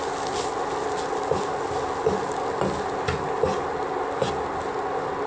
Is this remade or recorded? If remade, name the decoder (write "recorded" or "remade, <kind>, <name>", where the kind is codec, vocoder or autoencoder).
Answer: recorded